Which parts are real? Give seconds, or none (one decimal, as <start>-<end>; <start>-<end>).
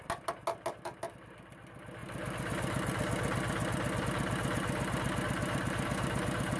0.0-6.6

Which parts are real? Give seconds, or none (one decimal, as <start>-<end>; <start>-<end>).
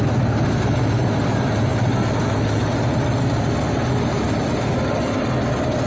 0.0-5.9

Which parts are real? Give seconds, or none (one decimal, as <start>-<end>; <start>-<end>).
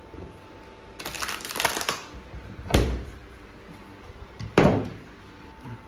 0.5-1.9; 3.2-4.0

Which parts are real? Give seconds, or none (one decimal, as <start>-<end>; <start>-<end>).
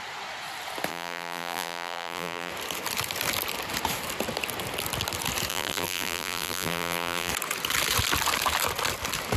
0.0-0.9; 2.5-5.5; 7.3-9.4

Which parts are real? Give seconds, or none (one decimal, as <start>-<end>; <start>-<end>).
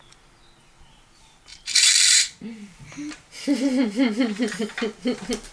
0.0-1.5; 4.6-5.5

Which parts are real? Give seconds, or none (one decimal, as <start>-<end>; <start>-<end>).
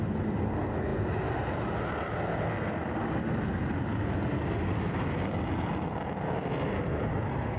0.0-7.6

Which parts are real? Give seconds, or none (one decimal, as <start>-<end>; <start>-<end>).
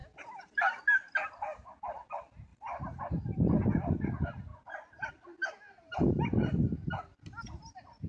0.0-8.1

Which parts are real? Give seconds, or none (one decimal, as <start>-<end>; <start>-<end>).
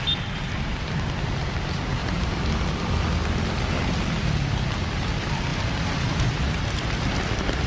2.0-2.7; 3.2-3.7